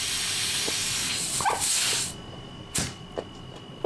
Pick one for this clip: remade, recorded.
recorded